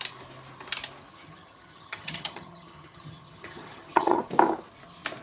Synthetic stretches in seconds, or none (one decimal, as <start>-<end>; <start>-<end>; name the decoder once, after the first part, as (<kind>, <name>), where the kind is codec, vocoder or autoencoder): 1.1-4.2 (vocoder, HiFi-GAN)